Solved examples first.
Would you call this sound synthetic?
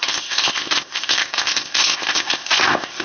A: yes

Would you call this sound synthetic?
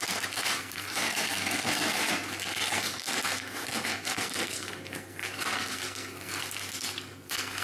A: yes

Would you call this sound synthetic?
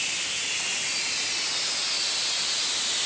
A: no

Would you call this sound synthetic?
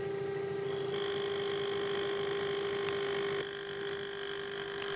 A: no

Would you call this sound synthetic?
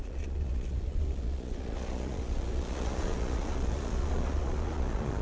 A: yes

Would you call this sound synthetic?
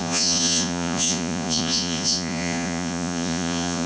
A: yes